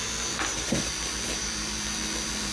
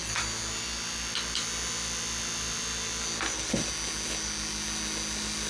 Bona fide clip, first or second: second